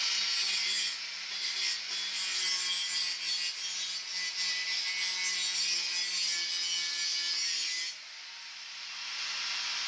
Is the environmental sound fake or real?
real